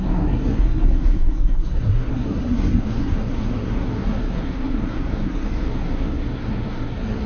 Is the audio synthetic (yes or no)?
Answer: yes